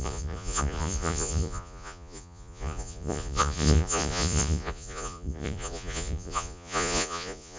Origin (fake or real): fake